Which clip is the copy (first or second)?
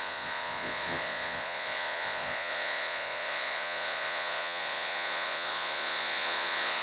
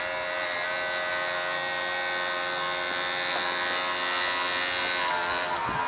first